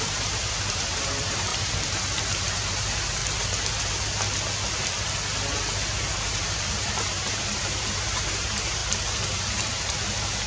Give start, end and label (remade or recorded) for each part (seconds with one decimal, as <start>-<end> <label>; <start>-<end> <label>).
0.0-1.5 remade; 1.5-2.2 recorded; 2.2-3.2 remade; 3.2-6.2 recorded; 6.2-8.8 remade; 8.8-10.5 recorded